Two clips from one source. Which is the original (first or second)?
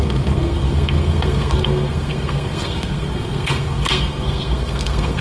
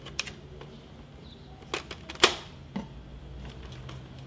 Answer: second